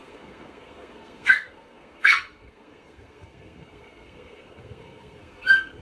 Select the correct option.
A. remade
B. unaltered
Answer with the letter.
A